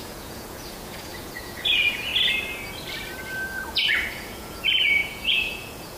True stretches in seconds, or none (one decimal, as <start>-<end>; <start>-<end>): 2.1-4.1